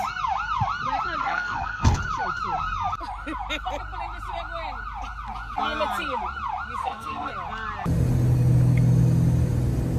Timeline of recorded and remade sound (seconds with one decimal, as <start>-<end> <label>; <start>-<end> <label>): 0.0-1.2 recorded; 1.2-2.0 remade; 2.0-6.8 recorded; 6.8-7.3 remade; 7.3-10.0 recorded